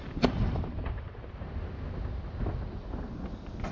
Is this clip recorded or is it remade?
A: recorded